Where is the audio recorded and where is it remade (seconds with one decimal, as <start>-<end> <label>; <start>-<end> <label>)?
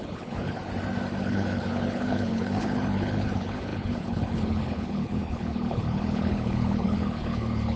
0.0-0.6 remade; 0.6-1.2 recorded; 1.2-7.8 remade